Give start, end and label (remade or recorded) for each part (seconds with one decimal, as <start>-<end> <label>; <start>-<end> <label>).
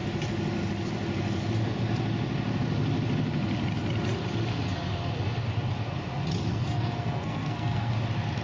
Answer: 0.0-6.5 recorded; 6.5-7.9 remade; 7.9-8.4 recorded